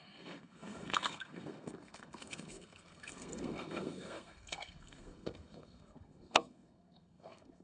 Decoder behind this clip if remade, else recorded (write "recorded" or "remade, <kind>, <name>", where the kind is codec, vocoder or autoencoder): remade, codec, SNAC